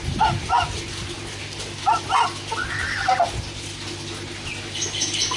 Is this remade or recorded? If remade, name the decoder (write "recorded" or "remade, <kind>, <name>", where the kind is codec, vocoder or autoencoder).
recorded